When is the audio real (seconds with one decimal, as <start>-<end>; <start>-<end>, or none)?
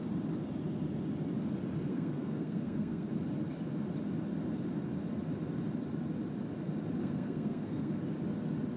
0.0-1.9; 3.1-7.0; 7.9-8.8